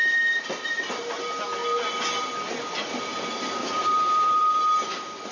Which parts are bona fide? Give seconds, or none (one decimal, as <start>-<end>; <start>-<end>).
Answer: 0.0-3.6; 4.4-5.3